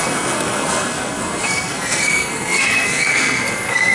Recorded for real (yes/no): no